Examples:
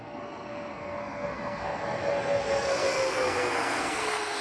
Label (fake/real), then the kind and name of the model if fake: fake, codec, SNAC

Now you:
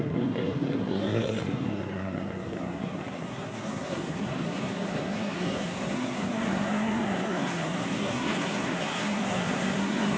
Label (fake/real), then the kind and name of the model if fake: fake, codec, SNAC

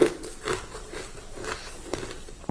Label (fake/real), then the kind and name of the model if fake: real